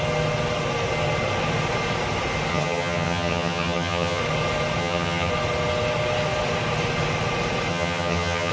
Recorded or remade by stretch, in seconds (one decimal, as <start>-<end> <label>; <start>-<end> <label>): 0.0-2.5 recorded; 2.5-4.2 remade; 4.2-4.8 recorded; 4.8-5.3 remade; 5.3-7.7 recorded; 7.7-8.5 remade